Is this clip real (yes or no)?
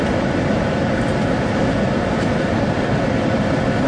yes